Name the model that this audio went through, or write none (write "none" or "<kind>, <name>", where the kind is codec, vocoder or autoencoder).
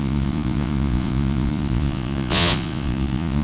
vocoder, Vocos